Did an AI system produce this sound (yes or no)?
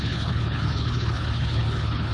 yes